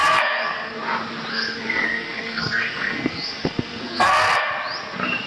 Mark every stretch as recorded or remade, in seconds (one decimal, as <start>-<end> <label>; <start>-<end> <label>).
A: 0.0-0.8 remade; 0.8-1.3 recorded; 1.3-4.5 remade; 4.5-5.3 recorded